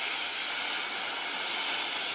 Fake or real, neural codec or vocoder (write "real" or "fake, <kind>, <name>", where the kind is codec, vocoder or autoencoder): real